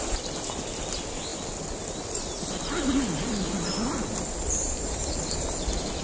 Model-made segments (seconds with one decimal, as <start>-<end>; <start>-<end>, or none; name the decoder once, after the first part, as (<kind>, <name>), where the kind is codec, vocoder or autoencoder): none